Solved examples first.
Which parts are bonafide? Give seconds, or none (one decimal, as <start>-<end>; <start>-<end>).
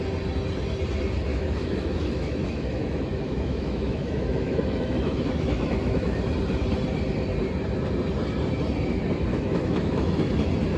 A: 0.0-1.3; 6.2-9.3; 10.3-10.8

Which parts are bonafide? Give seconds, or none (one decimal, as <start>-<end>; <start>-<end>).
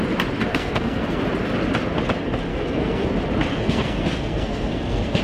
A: 0.0-0.5; 1.2-2.5; 3.1-3.5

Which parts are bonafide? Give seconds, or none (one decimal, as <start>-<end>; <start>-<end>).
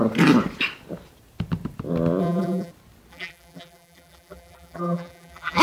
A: 0.0-2.2; 2.7-3.1